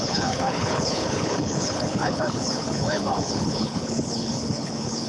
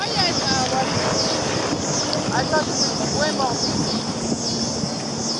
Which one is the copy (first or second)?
first